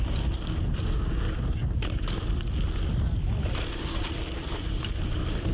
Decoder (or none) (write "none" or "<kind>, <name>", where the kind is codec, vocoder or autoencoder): none